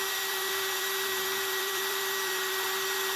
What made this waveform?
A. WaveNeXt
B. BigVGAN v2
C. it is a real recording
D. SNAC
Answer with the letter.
B